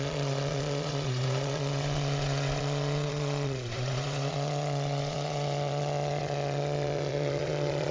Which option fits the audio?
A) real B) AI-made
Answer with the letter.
B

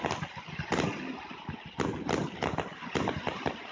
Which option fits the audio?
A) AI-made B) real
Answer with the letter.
B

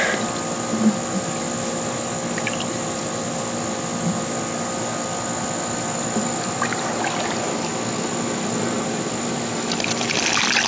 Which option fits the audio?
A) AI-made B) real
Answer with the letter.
B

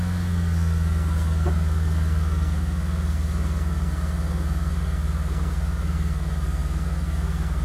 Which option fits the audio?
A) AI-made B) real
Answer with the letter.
A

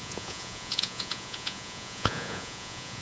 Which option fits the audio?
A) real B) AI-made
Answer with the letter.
B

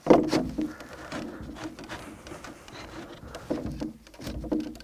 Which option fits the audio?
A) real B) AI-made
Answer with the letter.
A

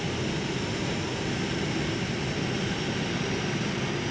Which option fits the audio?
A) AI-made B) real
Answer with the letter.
B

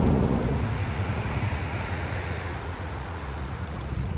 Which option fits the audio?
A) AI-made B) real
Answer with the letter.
A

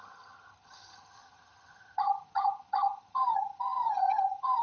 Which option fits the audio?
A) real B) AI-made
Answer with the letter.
B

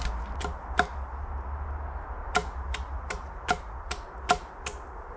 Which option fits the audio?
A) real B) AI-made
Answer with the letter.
A